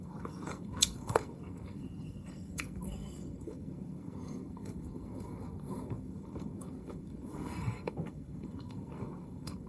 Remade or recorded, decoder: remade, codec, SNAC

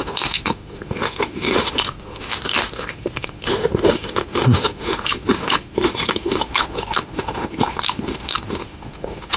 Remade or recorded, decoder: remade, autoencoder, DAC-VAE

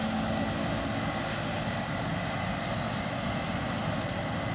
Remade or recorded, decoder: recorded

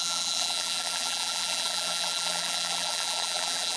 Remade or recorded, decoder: remade, vocoder, BigVGAN v2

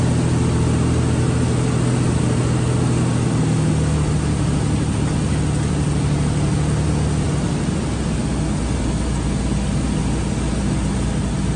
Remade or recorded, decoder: recorded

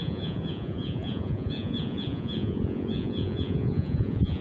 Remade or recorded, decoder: remade, vocoder, Vocos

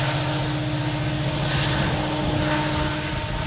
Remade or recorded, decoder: recorded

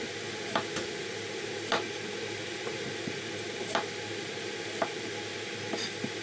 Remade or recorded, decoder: recorded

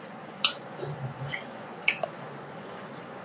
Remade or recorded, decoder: remade, vocoder, Vocos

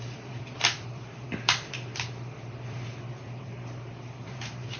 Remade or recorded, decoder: remade, vocoder, BigVGAN v2